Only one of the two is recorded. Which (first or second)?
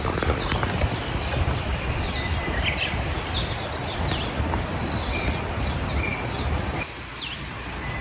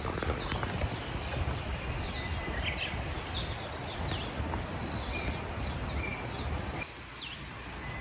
second